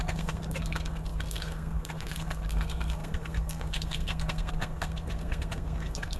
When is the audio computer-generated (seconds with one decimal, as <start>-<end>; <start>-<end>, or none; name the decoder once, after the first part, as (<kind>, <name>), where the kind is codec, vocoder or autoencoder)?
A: 0.0-6.2 (codec, SNAC)